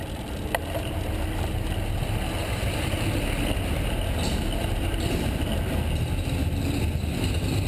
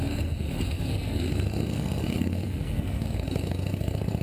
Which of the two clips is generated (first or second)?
second